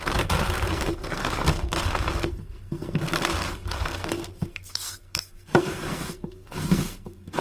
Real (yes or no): no